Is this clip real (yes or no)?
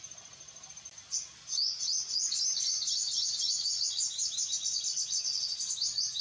yes